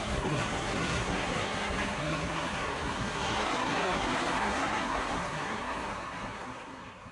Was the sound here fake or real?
fake